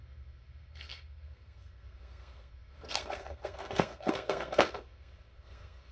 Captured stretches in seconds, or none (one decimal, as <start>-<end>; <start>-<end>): none